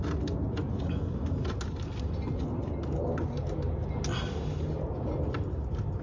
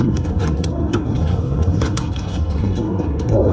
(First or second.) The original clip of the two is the first